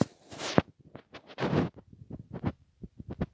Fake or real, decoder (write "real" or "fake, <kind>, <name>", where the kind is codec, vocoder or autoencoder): real